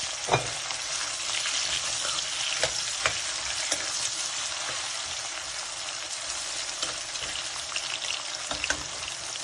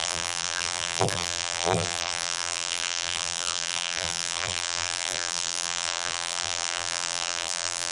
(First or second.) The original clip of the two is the first